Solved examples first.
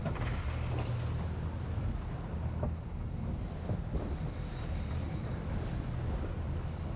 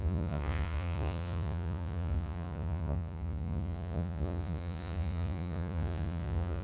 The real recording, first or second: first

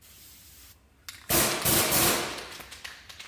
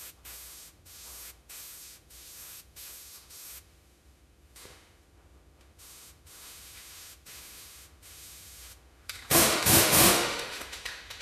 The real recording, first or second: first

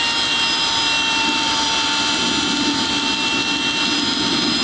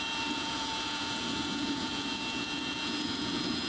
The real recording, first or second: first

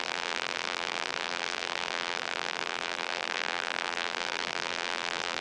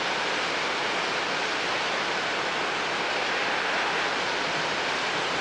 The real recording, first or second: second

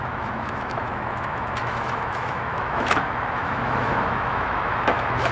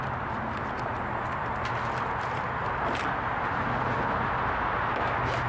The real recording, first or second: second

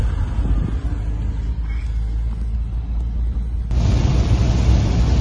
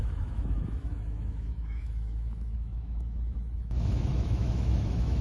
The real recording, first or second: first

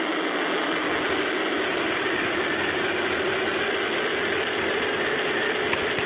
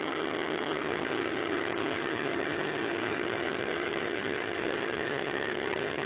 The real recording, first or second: first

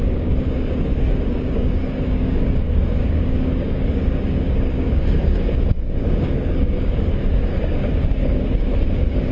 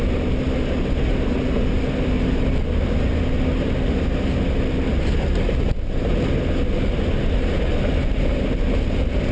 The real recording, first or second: second